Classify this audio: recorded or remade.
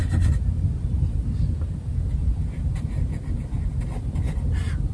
recorded